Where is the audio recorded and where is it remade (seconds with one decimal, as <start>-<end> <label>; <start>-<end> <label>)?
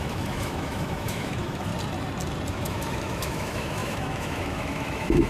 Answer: 0.0-1.7 remade; 1.7-2.5 recorded; 2.5-5.3 remade